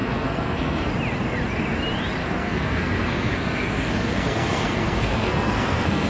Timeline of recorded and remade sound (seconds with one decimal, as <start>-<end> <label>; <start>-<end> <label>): 0.0-0.9 remade; 0.9-2.2 recorded; 2.2-6.1 remade